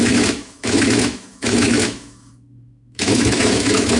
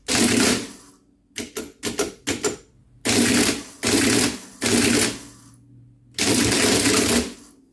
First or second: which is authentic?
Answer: second